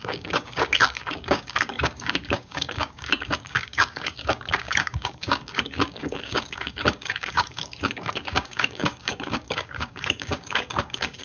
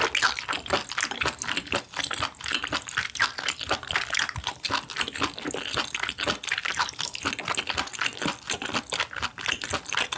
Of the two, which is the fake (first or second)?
first